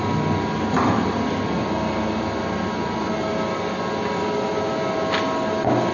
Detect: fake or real real